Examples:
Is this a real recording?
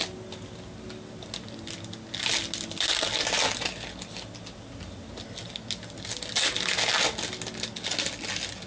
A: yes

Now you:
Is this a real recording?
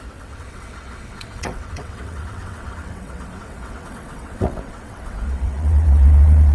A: no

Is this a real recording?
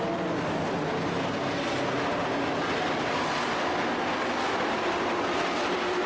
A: yes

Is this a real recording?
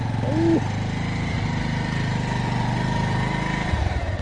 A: yes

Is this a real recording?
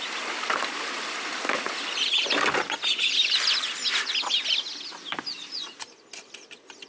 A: yes